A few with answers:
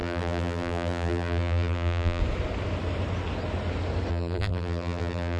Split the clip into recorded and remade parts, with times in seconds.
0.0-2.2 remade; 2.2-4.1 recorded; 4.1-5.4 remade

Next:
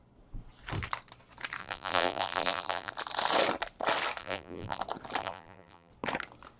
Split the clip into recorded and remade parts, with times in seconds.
0.0-1.6 recorded; 1.6-2.9 remade; 2.9-4.2 recorded; 4.2-4.8 remade; 4.8-5.2 recorded; 5.2-5.9 remade; 5.9-6.6 recorded

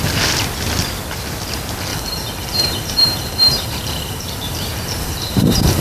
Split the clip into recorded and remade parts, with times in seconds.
0.0-1.9 recorded; 1.9-5.8 remade

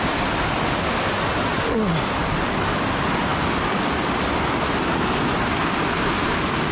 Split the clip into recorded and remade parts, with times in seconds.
0.0-3.3 recorded; 3.3-4.9 remade; 4.9-6.7 recorded

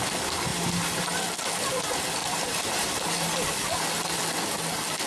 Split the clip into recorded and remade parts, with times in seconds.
0.0-0.5 recorded; 0.5-1.0 remade; 1.0-2.2 recorded; 2.2-3.4 remade; 3.4-5.1 recorded

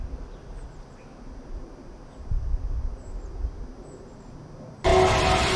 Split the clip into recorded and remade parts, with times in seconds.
0.0-5.6 remade

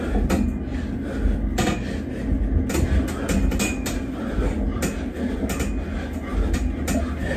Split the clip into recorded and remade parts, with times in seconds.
0.0-7.4 recorded